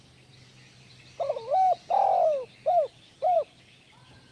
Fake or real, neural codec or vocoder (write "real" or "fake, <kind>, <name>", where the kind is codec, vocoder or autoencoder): fake, vocoder, BigVGAN v2